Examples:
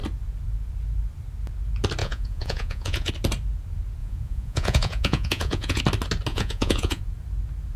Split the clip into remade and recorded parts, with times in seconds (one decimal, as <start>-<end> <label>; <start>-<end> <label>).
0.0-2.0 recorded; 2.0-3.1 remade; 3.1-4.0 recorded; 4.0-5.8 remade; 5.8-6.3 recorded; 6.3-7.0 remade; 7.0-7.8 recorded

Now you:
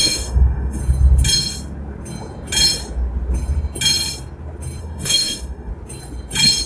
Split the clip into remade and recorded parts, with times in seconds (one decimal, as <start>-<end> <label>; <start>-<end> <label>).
0.0-0.8 remade; 0.8-4.8 recorded; 4.8-5.7 remade; 5.7-6.7 recorded

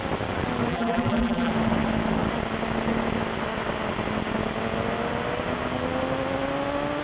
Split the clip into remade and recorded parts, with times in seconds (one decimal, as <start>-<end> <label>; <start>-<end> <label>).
0.0-0.7 recorded; 0.7-1.5 remade; 1.5-7.0 recorded